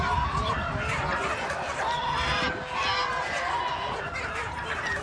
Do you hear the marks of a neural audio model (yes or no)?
no